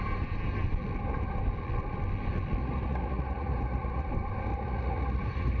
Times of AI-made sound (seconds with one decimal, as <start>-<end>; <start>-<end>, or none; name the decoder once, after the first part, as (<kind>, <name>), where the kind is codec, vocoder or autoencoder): 2.6-4.1 (vocoder, Vocos); 4.5-5.6

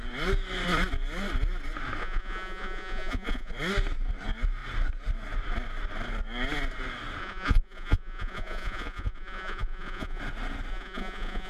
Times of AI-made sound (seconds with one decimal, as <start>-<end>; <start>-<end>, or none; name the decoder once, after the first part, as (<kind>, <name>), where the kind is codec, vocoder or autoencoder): 2.0-3.5 (vocoder, Vocos); 7.2-10.2; 10.7-11.5

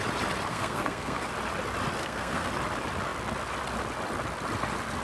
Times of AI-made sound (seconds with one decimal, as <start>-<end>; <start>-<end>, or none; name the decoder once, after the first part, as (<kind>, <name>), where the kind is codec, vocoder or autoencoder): 0.5-1.3 (codec, SNAC); 2.0-2.5

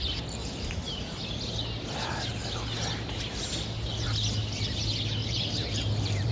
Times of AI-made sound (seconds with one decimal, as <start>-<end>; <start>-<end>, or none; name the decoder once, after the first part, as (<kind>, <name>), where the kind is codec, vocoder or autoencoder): 0.4-1.7 (vocoder, BigVGAN v2); 5.2-6.3

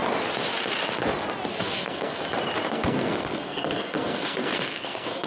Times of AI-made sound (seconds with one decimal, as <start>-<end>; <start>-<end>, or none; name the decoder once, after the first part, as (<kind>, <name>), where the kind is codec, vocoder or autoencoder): 1.6-2.2 (codec, SNAC); 2.7-5.3

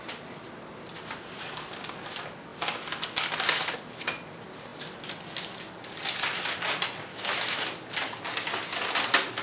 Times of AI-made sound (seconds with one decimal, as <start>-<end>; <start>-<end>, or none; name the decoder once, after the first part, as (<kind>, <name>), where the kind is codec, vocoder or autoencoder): 7.1-7.6 (autoencoder, DAC-VAE)